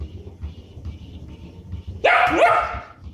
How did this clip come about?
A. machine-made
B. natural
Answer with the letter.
B